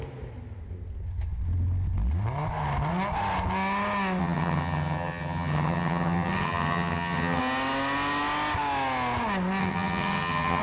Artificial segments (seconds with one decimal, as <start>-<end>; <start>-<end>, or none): 4.2-7.4; 9.6-10.6